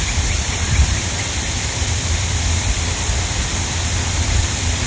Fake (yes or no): yes